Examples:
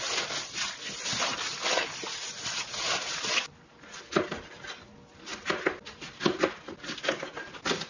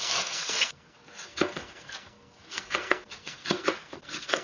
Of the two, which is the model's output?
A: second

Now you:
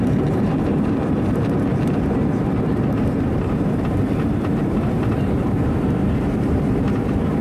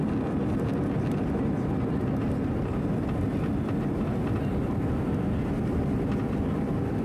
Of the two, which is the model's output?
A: first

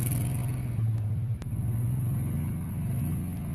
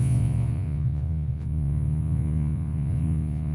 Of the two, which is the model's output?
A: second